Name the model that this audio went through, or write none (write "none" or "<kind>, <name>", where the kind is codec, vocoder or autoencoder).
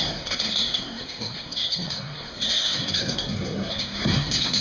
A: codec, SNAC